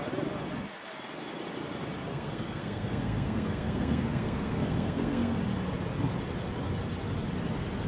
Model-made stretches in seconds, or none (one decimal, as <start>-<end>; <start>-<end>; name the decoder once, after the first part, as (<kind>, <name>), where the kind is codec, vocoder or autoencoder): 2.1-5.4 (codec, SNAC)